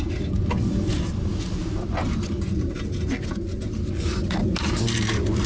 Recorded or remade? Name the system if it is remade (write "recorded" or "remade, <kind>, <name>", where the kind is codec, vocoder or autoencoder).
recorded